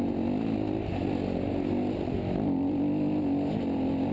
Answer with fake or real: real